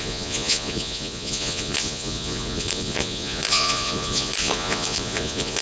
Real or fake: fake